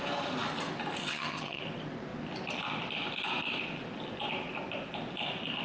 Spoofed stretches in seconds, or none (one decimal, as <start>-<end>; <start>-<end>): 1.0-1.6

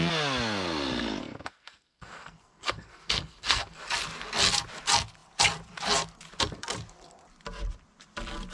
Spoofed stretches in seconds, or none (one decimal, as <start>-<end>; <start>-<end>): 1.2-3.8

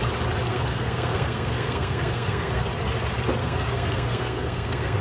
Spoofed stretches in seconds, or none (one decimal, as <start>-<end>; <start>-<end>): 0.5-2.7; 3.4-5.0

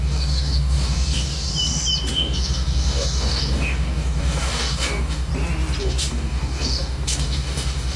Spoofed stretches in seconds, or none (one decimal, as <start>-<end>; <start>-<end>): 0.0-1.5; 2.1-5.3; 5.8-8.0

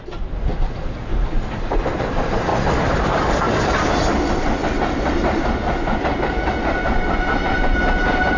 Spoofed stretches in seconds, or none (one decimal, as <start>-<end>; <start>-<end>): none